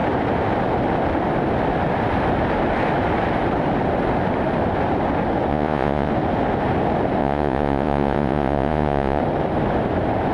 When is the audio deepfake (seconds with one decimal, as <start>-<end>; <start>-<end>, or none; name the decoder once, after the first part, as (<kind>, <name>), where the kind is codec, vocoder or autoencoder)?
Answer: 5.5-6.1 (vocoder, Vocos); 7.2-9.2